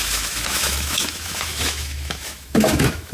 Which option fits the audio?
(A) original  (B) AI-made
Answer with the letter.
B